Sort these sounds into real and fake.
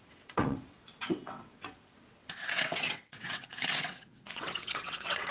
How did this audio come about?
fake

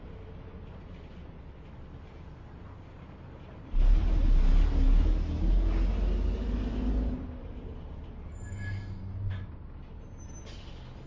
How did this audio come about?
real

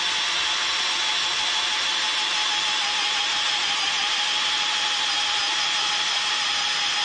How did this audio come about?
real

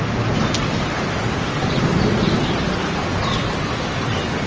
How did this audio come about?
real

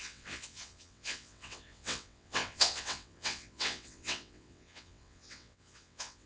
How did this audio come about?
fake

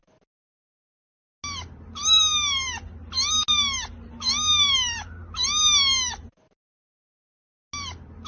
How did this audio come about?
real